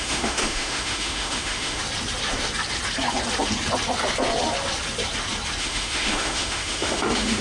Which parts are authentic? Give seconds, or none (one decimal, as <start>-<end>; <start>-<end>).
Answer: 1.8-5.6